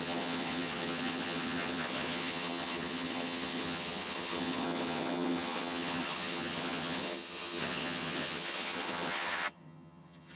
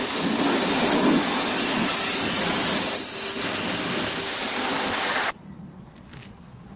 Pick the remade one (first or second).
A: first